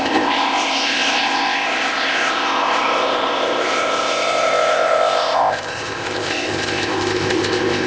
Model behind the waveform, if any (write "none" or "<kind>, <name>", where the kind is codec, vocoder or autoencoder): codec, ZipCodec